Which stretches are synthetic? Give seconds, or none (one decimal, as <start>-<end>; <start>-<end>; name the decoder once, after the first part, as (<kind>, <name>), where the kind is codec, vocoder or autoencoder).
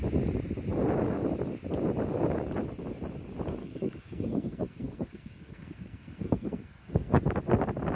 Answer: 3.6-7.2 (codec, SNAC)